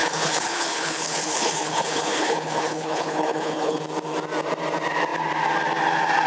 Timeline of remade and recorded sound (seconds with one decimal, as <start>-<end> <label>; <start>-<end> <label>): 0.0-3.8 remade; 3.8-6.3 recorded